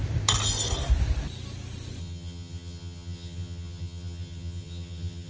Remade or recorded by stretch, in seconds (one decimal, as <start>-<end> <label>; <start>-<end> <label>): 0.0-2.0 recorded; 2.0-5.3 remade